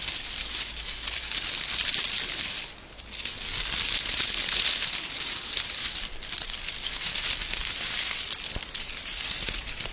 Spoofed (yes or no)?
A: no